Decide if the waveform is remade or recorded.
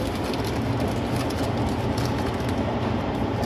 recorded